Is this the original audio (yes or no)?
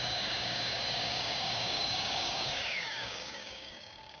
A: no